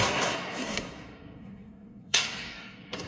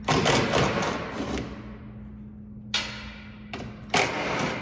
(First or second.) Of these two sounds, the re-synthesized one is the first